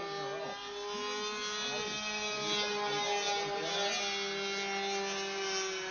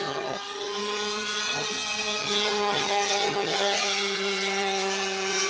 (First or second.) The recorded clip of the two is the first